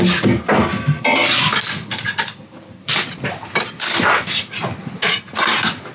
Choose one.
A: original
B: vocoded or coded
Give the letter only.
A